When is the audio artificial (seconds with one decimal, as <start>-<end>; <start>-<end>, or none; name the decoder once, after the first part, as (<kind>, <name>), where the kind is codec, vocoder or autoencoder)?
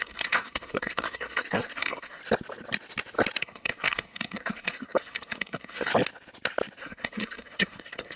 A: 0.0-2.2 (codec, SNAC); 3.4-5.9; 6.8-8.2